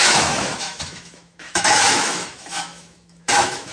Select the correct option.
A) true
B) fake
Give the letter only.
B